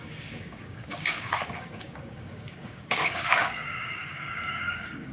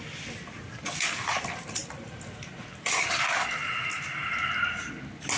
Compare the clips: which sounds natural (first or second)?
second